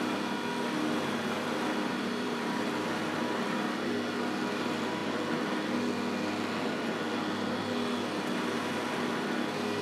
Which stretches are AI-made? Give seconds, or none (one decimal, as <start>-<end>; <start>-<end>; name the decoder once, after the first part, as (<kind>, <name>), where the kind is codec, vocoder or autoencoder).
1.9-3.0 (vocoder, BigVGAN v2)